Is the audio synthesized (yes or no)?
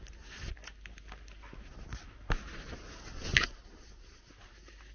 no